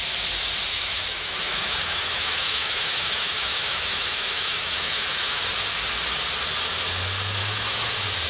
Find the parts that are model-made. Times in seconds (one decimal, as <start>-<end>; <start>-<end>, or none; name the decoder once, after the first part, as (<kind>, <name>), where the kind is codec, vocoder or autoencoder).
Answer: 0.7-5.4 (autoencoder, DAC-VAE); 7.4-7.9